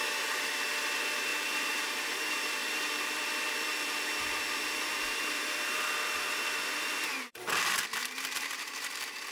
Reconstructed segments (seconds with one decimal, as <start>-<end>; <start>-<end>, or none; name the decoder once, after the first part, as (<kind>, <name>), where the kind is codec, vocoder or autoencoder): 0.0-9.3 (vocoder, BigVGAN v2)